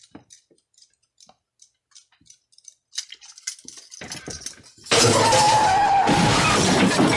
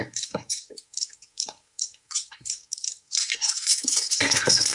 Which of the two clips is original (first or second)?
first